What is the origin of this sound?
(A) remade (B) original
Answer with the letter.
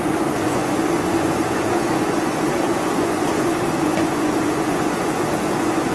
A